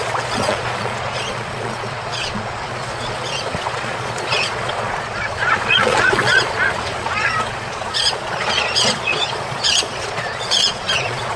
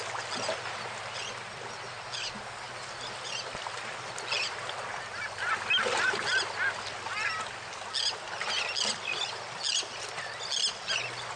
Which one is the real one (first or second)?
second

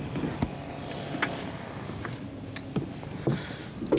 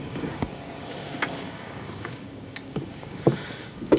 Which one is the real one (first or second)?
first